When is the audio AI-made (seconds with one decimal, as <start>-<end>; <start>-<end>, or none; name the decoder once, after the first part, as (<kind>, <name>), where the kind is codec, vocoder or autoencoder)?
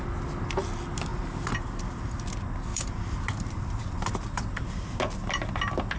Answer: 1.1-1.8 (vocoder, BigVGAN v2); 2.7-5.0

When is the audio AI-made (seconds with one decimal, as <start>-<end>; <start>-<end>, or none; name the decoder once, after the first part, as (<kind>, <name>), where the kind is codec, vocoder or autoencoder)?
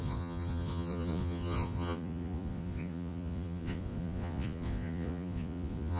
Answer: 0.0-6.0 (vocoder, Vocos)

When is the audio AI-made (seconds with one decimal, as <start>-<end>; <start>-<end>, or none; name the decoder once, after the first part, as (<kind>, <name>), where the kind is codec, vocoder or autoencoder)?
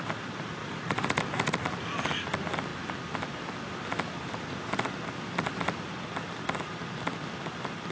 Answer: 0.6-1.2 (vocoder, Vocos)